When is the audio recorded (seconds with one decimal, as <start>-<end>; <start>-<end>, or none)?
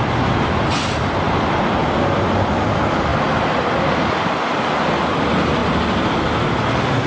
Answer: 0.0-7.1